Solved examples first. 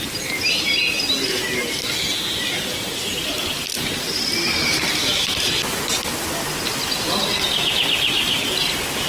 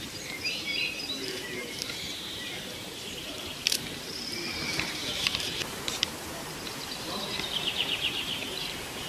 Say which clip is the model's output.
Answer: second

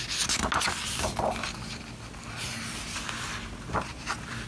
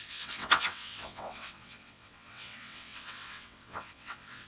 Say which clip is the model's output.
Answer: second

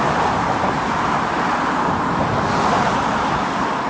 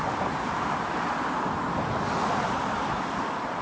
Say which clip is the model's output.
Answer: second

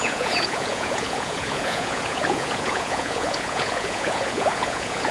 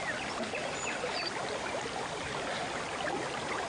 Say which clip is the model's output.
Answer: first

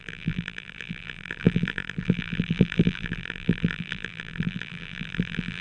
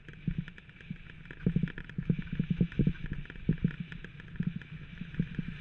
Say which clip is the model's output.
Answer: first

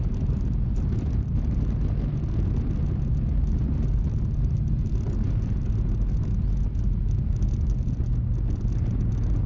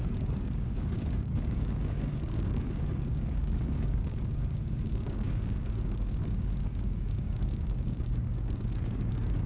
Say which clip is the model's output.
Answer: second